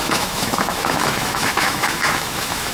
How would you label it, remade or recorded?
remade